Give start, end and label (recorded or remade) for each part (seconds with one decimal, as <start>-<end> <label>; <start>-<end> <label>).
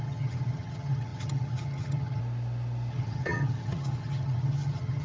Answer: 0.0-2.2 remade; 2.2-2.9 recorded; 2.9-5.0 remade